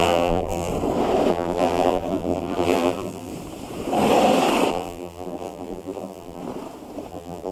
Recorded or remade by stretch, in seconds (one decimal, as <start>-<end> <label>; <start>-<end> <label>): 0.0-0.7 remade; 0.7-1.3 recorded; 1.3-3.3 remade; 3.3-4.7 recorded; 4.7-6.4 remade; 6.4-7.1 recorded; 7.1-7.5 remade